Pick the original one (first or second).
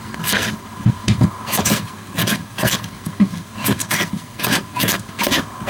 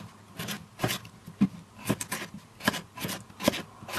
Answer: second